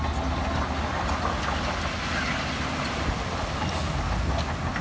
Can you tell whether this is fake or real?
real